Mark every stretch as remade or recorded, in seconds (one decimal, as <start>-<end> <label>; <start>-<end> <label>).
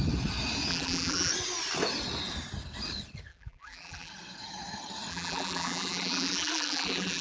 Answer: 0.0-0.7 recorded; 0.7-1.3 remade; 1.3-3.3 recorded; 3.3-4.1 remade; 4.1-5.1 recorded; 5.1-7.2 remade